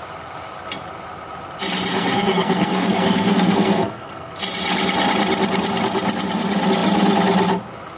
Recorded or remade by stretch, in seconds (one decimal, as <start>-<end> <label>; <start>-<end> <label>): 0.0-1.9 recorded; 1.9-4.3 remade; 4.3-8.0 recorded